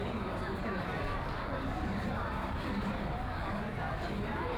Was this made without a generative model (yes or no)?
no